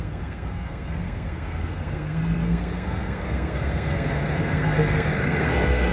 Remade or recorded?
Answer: remade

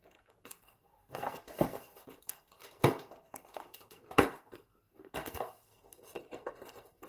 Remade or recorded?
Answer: remade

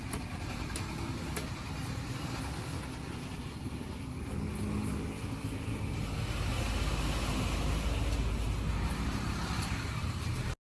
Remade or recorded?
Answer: recorded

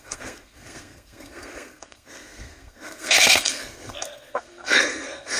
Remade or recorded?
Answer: remade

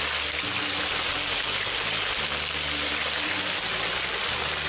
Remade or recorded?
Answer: recorded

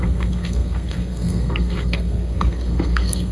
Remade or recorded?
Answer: remade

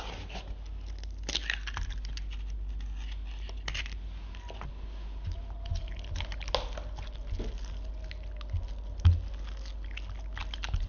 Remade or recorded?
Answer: recorded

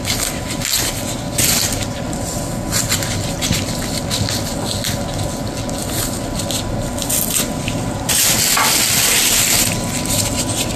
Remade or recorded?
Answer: recorded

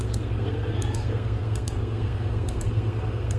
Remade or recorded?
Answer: remade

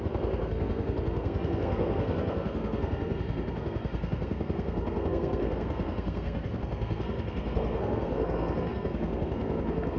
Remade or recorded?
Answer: remade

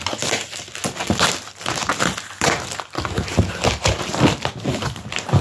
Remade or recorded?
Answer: recorded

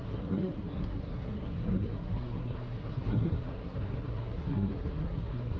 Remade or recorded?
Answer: remade